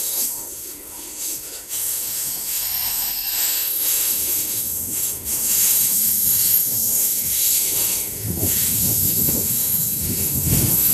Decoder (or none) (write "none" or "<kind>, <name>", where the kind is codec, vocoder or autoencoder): autoencoder, DAC-VAE